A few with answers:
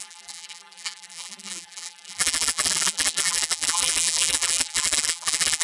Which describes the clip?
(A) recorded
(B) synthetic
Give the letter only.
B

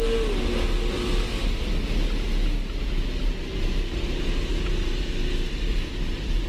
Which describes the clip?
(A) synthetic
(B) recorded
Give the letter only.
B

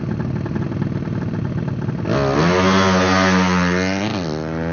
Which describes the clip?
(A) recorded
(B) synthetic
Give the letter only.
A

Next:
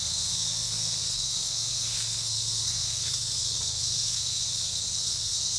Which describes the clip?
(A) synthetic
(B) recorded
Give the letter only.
A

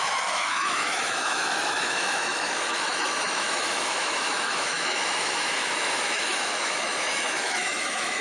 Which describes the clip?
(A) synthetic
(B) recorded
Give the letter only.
A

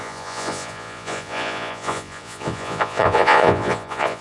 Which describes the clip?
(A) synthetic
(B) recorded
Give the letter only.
A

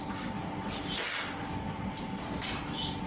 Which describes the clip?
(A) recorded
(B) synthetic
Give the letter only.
A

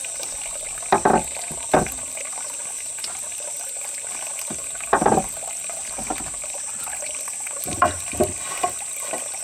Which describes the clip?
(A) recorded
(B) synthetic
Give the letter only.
A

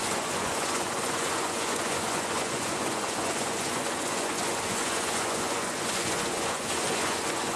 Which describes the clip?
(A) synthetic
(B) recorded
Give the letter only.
A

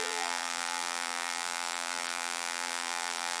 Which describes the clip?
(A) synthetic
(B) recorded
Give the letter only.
A